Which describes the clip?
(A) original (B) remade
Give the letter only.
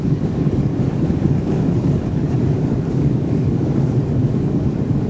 B